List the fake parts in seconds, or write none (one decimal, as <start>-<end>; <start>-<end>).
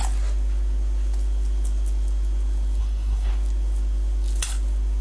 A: 2.8-3.3